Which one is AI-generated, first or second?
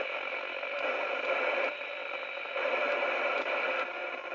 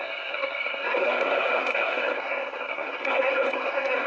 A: second